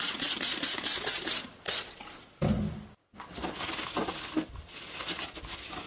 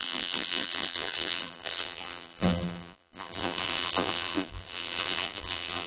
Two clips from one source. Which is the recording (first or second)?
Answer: first